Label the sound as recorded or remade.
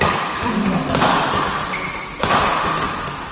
recorded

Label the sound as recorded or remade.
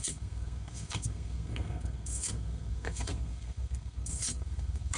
remade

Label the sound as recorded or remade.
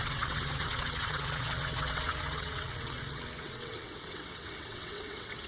remade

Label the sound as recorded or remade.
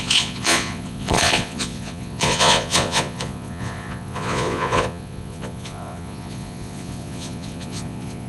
remade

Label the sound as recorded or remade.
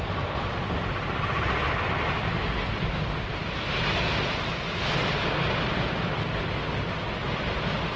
recorded